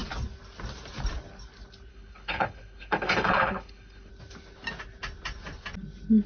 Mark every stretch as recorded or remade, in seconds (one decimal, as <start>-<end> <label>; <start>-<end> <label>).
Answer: 0.0-1.9 recorded; 1.9-4.1 remade; 4.1-6.3 recorded